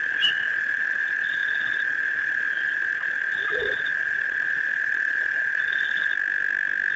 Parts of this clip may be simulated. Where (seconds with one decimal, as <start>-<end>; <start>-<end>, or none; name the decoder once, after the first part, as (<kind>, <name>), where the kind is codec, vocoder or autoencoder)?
0.0-6.1 (vocoder, Vocos)